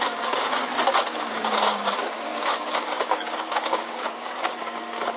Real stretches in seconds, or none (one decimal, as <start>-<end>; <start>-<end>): 0.7-1.3

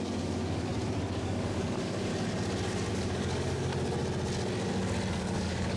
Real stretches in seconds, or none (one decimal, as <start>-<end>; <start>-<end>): 0.7-1.2; 2.1-2.9; 3.7-5.1

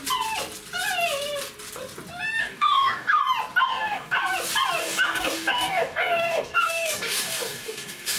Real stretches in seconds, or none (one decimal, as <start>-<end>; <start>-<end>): 0.0-2.4; 3.2-3.6; 4.2-4.8

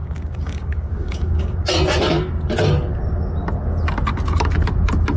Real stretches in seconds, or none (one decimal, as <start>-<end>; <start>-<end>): 1.6-5.2

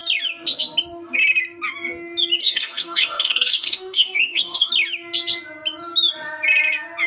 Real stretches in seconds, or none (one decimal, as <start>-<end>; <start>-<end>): 0.0-2.4; 4.7-7.1

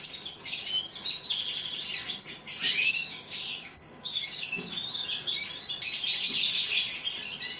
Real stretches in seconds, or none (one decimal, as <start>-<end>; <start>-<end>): 0.0-2.8; 4.6-7.6

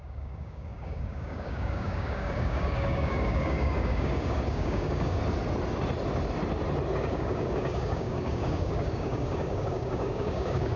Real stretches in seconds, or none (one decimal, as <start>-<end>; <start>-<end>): 5.2-7.0